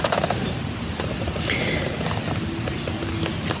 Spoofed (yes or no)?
no